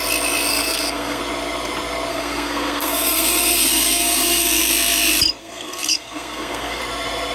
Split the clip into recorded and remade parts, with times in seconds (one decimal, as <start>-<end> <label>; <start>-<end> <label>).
0.0-0.5 recorded; 0.5-1.2 remade; 1.2-2.1 recorded; 2.1-4.6 remade; 4.6-5.4 recorded; 5.4-6.8 remade; 6.8-7.3 recorded